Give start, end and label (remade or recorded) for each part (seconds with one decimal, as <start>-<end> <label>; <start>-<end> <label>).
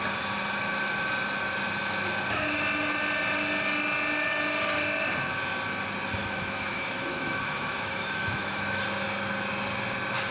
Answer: 0.0-6.2 recorded; 6.2-8.8 remade; 8.8-10.3 recorded